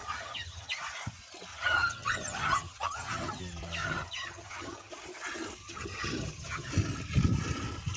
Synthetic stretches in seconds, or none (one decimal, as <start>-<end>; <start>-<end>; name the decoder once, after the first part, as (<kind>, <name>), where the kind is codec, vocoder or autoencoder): 0.0-0.7 (vocoder, HiFi-GAN); 1.5-3.4; 3.8-4.9; 5.6-6.7